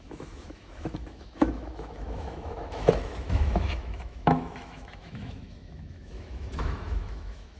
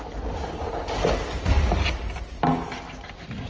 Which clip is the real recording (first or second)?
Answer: second